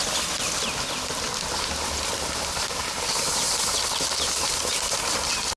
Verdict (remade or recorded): recorded